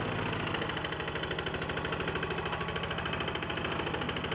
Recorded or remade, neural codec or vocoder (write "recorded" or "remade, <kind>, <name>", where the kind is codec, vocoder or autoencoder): recorded